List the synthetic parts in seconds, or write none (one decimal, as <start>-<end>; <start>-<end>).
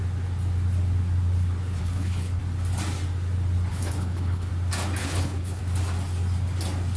1.8-2.4; 3.7-4.5; 5.0-5.6